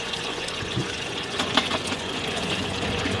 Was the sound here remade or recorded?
remade